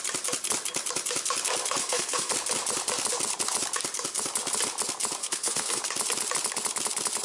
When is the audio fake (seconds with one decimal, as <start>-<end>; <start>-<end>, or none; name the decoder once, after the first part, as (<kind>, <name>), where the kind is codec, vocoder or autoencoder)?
1.8-2.3 (codec, SNAC); 5.2-5.8